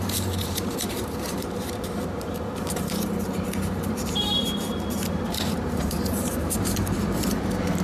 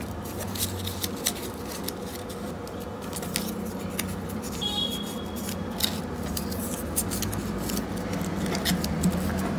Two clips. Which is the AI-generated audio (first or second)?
first